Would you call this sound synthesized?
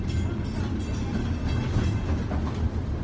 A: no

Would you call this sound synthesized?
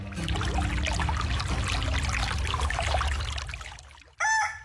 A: no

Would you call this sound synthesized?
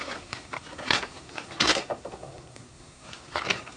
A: yes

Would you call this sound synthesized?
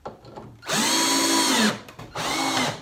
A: no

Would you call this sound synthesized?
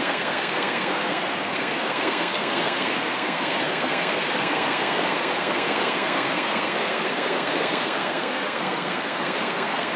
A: yes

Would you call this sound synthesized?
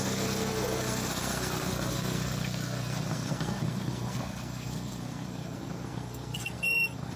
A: yes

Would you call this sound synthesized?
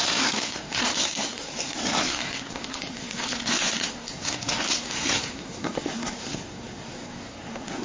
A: yes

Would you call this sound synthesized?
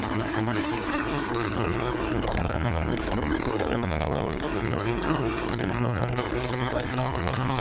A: yes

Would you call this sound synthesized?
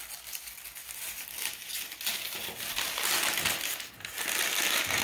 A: no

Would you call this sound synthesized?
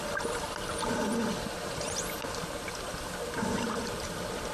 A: no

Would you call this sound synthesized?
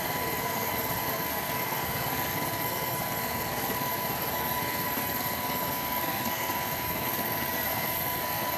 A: yes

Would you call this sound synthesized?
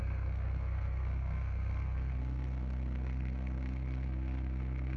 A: yes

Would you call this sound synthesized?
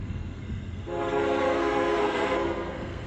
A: yes